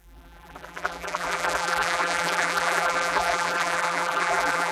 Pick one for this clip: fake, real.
fake